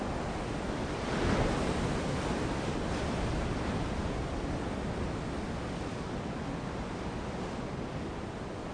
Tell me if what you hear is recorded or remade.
recorded